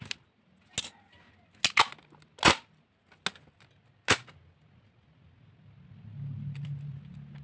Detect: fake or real real